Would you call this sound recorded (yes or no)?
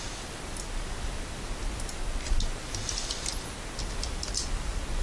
yes